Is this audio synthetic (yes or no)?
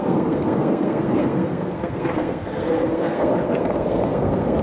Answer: yes